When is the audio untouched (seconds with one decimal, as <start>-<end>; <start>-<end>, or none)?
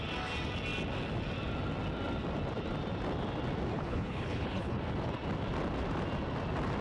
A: 0.0-3.7; 4.8-6.8